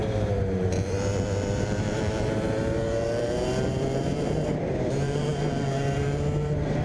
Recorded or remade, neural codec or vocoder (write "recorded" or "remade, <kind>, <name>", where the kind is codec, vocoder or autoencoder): remade, vocoder, BigVGAN v2